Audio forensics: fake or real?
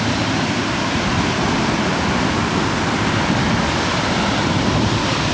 fake